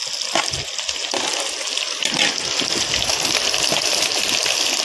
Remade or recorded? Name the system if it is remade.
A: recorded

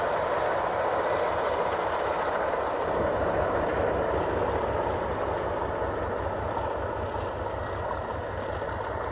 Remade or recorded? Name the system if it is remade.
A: recorded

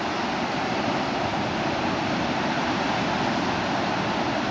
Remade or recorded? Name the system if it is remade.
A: recorded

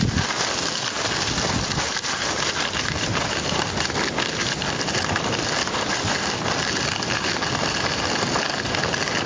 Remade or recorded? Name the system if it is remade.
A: recorded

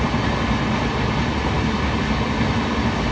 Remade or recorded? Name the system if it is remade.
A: recorded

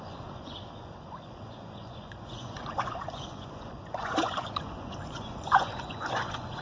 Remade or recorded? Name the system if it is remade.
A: remade, vocoder, Vocos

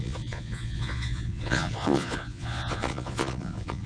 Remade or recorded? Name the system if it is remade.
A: remade, vocoder, Vocos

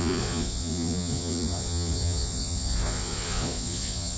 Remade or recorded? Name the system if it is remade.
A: remade, vocoder, Vocos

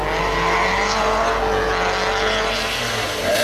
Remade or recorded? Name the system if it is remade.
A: recorded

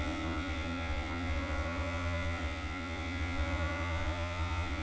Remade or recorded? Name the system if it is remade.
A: remade, vocoder, Vocos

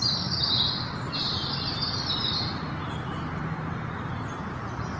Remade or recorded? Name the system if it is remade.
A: recorded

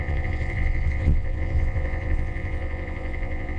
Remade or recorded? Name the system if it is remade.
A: remade, vocoder, Vocos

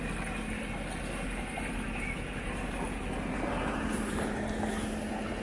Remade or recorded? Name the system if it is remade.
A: recorded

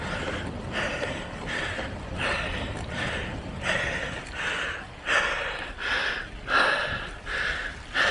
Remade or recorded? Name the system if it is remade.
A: recorded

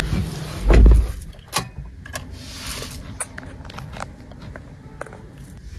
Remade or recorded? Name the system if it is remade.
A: recorded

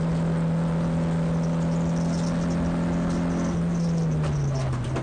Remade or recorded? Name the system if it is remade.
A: recorded